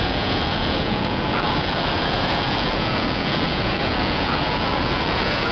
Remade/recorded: remade